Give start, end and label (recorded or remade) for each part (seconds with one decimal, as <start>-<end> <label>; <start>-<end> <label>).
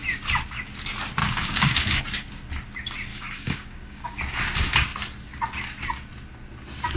0.0-1.2 recorded; 1.2-2.0 remade; 2.0-3.1 recorded; 3.1-4.2 remade; 4.2-7.0 recorded